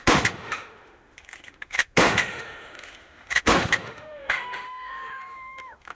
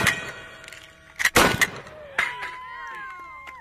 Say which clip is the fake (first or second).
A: first